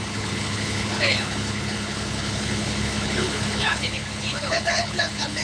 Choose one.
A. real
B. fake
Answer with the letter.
B